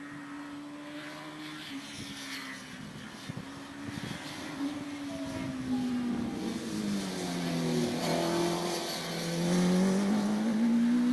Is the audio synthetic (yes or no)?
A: no